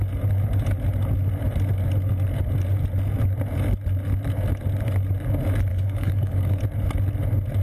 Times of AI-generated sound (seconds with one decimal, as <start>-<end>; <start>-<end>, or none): 5.7-6.6